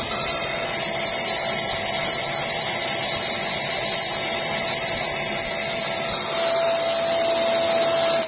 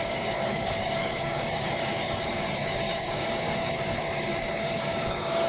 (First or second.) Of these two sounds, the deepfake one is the second